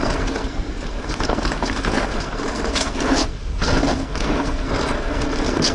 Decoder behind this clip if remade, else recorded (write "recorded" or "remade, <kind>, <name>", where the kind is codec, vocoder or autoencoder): remade, codec, SNAC